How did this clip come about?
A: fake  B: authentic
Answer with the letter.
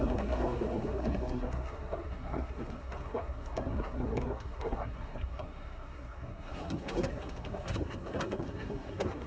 A